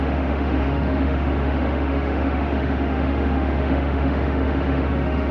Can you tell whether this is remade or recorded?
remade